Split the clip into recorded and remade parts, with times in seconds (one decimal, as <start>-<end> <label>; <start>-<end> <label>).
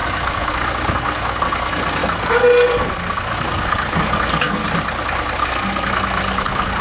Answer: 0.0-4.6 remade; 4.6-5.4 recorded; 5.4-6.8 remade